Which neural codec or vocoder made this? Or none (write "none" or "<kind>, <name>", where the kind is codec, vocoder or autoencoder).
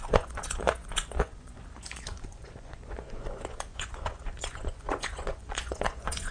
vocoder, Vocos